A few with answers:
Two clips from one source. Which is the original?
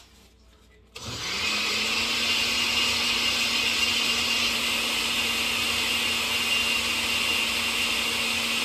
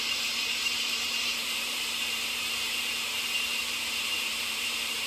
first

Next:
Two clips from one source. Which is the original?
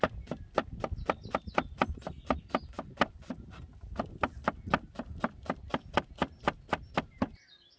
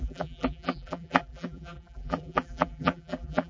first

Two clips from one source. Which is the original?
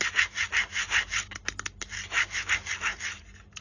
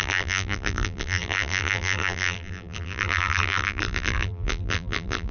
first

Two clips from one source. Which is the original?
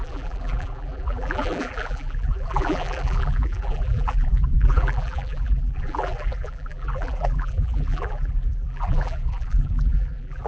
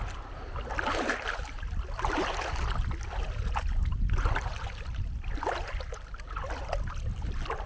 second